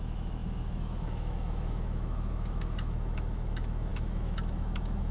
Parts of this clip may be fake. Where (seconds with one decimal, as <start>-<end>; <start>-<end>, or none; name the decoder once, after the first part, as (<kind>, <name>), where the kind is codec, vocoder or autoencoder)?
0.0-5.1 (autoencoder, DAC-VAE)